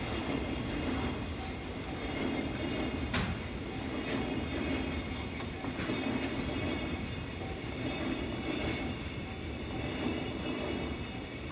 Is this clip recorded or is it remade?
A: recorded